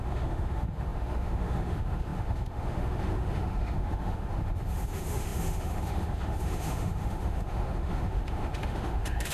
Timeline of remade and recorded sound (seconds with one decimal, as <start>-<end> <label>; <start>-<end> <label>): 0.0-9.3 remade